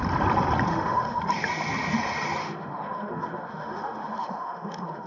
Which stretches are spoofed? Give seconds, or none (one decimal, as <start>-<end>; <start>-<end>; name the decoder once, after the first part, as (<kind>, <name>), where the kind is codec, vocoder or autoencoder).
0.7-1.2 (autoencoder, DAC-VAE); 2.4-5.1